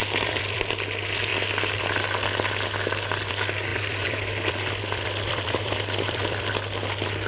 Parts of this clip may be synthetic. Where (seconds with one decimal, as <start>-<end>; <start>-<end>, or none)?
0.0-0.7; 3.7-6.5